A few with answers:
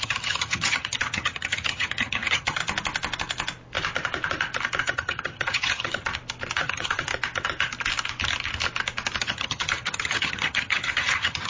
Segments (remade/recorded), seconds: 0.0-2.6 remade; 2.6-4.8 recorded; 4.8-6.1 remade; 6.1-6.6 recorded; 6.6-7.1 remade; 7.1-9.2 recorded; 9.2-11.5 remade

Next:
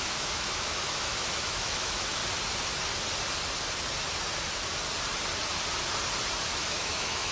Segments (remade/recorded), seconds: 0.0-2.2 remade; 2.2-6.6 recorded; 6.6-7.3 remade

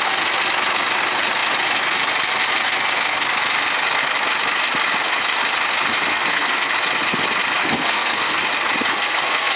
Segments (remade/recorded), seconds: 0.0-6.1 recorded; 6.1-6.7 remade; 6.7-7.6 recorded; 7.6-8.4 remade; 8.4-8.9 recorded; 8.9-9.6 remade

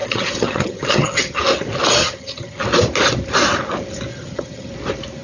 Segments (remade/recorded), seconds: 0.0-1.4 remade; 1.4-2.0 recorded; 2.0-2.6 remade; 2.6-4.1 recorded; 4.1-4.7 remade; 4.7-5.2 recorded

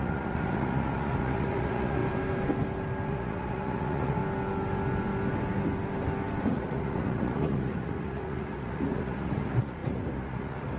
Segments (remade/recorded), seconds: 0.0-2.0 remade; 2.0-3.1 recorded; 3.1-4.2 remade; 4.2-6.5 recorded; 6.5-10.8 remade